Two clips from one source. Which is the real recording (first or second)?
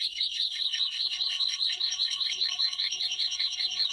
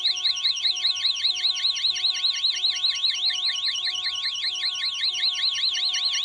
second